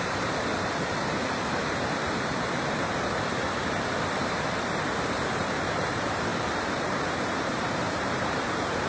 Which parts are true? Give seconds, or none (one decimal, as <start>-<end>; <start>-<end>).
none